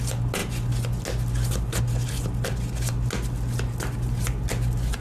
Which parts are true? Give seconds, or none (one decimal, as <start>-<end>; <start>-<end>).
0.0-5.0